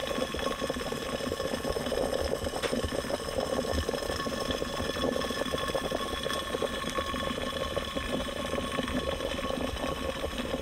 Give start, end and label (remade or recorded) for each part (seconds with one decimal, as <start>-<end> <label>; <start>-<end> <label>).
0.0-10.6 recorded